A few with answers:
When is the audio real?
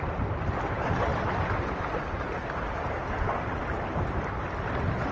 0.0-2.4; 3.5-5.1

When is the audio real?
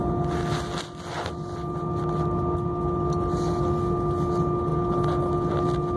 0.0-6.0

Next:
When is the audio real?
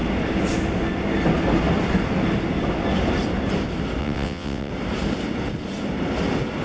0.0-4.0; 4.7-6.6